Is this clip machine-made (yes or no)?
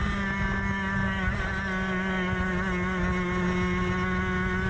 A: no